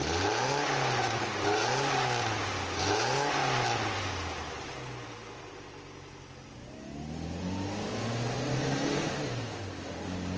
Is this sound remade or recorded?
recorded